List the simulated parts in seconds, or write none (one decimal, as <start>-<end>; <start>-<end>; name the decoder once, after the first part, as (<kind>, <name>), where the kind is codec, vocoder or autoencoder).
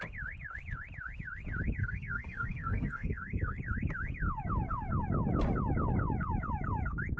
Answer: 1.8-3.6 (codec, SNAC)